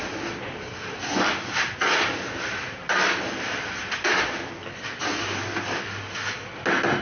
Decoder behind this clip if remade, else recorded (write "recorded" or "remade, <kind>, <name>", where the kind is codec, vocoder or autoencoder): recorded